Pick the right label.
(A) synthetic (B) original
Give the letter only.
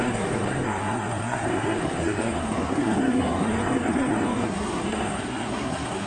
A